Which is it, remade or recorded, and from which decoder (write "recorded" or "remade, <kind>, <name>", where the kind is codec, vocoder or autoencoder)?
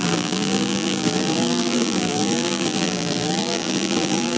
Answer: remade, vocoder, BigVGAN v2